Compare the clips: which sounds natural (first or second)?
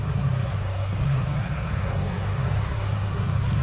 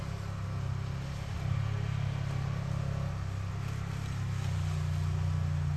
second